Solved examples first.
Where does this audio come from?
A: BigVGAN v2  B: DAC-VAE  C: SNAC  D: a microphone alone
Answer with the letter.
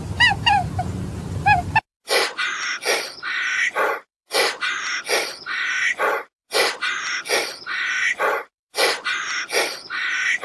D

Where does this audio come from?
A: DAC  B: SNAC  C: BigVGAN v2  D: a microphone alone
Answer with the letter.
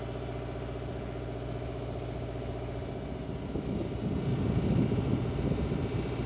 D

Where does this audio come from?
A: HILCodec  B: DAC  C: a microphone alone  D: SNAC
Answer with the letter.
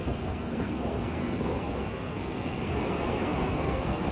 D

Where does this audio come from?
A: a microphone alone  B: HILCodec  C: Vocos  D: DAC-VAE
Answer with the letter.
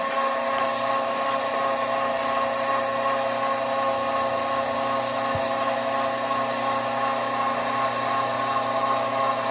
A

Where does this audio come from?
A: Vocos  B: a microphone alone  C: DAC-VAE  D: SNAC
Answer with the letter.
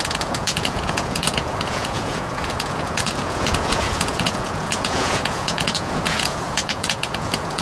A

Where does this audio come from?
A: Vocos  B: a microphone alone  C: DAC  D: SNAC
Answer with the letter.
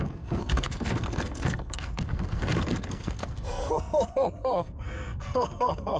D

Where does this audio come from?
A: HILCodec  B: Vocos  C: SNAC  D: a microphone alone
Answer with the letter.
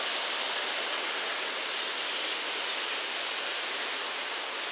D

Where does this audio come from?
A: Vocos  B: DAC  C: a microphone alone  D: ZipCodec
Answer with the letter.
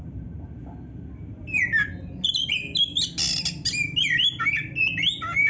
C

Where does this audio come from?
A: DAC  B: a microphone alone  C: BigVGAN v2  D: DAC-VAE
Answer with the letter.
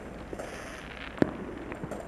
B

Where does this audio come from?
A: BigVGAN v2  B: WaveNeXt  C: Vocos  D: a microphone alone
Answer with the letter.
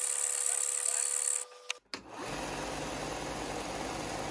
D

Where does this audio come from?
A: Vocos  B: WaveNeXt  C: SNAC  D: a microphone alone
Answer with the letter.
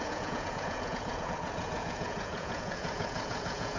A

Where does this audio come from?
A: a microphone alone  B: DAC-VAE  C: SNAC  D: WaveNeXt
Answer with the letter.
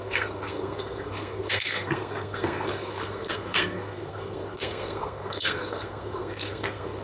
C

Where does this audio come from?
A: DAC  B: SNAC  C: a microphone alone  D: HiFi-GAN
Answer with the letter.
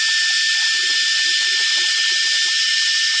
C